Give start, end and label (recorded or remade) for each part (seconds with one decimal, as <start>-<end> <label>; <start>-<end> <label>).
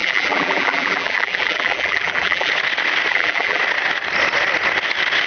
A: 0.0-2.5 remade; 2.5-3.1 recorded; 3.1-3.6 remade; 3.6-5.3 recorded